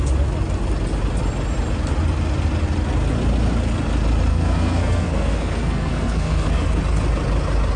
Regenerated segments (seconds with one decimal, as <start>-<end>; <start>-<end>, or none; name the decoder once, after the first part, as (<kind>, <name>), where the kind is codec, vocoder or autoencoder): 4.3-6.8 (codec, SNAC)